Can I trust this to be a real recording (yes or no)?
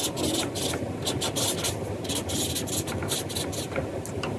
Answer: yes